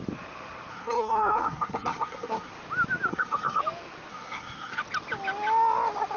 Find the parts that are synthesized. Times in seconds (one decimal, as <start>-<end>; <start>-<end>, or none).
0.7-2.5; 3.1-3.6; 4.1-4.8